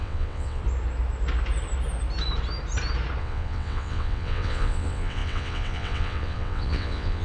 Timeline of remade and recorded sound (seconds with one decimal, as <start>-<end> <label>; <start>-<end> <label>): 0.0-0.6 remade; 0.6-3.2 recorded; 3.2-7.2 remade